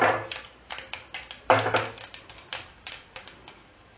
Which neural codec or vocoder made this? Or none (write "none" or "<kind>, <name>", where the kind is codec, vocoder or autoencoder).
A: none